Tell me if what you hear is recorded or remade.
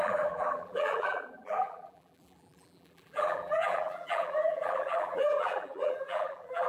remade